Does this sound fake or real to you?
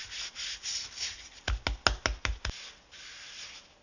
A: real